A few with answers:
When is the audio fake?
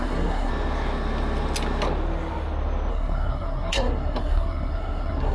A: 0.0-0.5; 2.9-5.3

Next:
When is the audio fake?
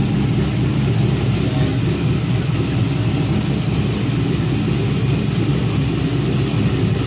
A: none